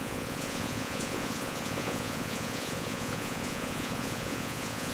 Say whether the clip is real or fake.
fake